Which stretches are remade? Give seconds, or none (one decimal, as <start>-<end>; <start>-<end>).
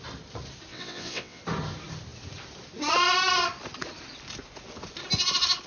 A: 0.7-1.4